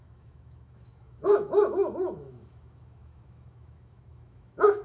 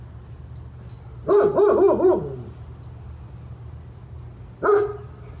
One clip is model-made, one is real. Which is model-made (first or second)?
first